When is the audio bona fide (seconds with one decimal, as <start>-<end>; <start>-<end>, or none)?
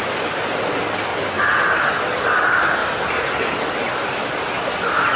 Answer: 0.0-5.2